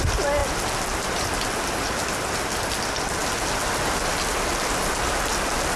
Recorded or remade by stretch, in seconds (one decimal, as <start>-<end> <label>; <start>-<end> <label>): 0.0-5.8 recorded